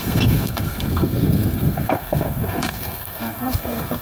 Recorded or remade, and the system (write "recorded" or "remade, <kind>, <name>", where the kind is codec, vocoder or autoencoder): remade, codec, SNAC